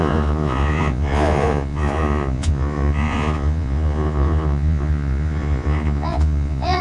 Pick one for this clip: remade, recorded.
remade